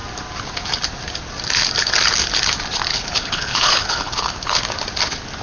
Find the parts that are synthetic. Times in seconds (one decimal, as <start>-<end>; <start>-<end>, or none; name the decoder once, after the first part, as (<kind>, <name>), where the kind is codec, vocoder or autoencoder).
2.9-4.6 (codec, HILCodec)